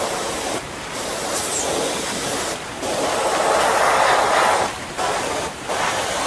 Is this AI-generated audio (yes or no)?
no